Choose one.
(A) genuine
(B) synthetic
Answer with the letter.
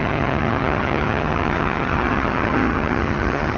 B